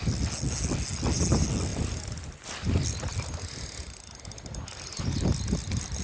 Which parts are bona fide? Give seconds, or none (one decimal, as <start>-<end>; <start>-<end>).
0.0-6.0